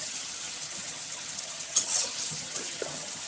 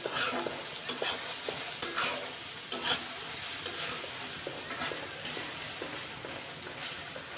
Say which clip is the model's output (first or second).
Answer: first